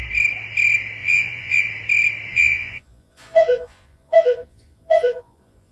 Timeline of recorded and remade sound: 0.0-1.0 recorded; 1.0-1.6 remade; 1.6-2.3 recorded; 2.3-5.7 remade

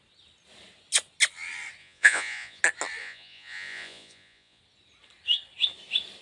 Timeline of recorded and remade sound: 0.0-1.8 recorded; 1.8-2.6 remade; 2.6-3.0 recorded; 3.0-4.6 remade; 4.6-6.2 recorded

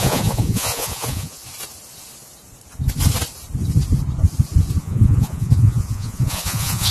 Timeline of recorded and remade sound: 0.0-1.4 remade; 1.4-4.8 recorded; 4.8-6.9 remade